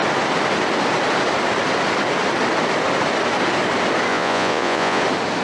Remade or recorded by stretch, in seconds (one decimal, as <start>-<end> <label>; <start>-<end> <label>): 0.0-4.1 recorded; 4.1-5.0 remade; 5.0-5.4 recorded

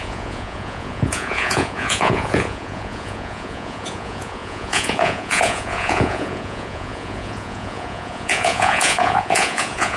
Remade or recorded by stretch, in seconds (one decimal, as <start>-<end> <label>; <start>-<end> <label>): 0.0-10.0 remade

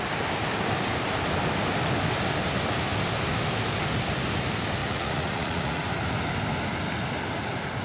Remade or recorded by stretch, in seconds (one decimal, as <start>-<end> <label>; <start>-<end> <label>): 0.0-4.8 recorded; 4.8-5.8 remade; 5.8-7.8 recorded

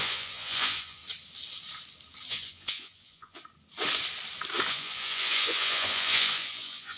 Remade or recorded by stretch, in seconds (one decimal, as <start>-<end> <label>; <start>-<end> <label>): 0.0-1.0 remade; 1.0-2.3 recorded; 2.3-3.4 remade; 3.4-4.7 recorded; 4.7-7.0 remade